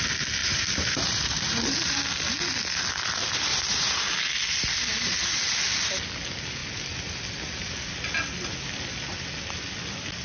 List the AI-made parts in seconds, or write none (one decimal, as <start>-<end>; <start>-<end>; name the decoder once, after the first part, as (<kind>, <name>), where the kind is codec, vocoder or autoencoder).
0.4-2.0 (vocoder, BigVGAN v2); 3.5-4.0